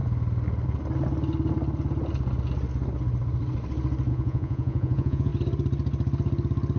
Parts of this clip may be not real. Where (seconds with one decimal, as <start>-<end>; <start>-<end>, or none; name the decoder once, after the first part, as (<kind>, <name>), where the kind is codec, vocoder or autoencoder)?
4.1-5.3 (vocoder, Vocos)